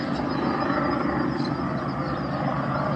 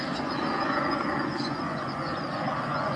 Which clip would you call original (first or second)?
first